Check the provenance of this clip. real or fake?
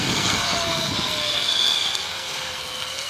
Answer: fake